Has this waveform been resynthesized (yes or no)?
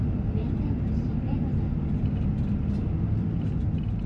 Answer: no